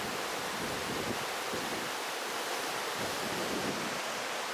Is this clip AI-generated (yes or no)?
yes